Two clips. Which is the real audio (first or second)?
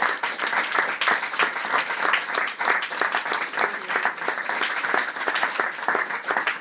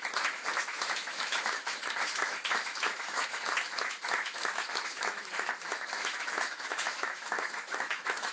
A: first